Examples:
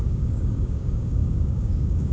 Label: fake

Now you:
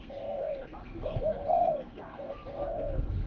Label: fake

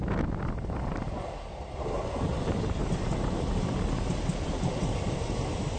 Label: real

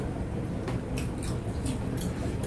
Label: fake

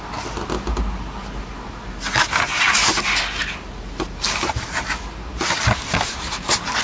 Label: real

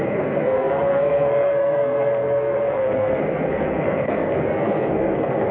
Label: fake